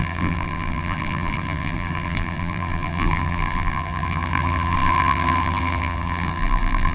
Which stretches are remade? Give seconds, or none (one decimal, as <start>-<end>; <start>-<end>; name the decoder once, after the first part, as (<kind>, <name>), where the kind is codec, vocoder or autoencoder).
0.0-6.9 (vocoder, BigVGAN v2)